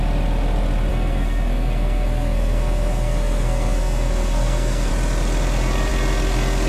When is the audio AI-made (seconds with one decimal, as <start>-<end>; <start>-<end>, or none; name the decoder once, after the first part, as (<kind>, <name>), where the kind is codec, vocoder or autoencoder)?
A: 0.9-4.9 (codec, SNAC)